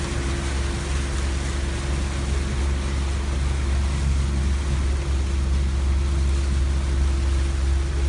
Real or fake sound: real